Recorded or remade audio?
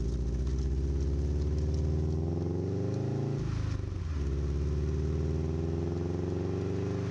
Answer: recorded